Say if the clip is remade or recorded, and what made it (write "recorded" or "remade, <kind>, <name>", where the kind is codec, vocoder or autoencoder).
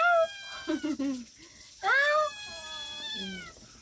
recorded